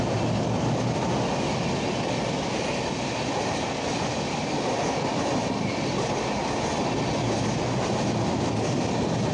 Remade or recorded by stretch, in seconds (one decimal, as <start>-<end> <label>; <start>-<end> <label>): 0.0-9.3 recorded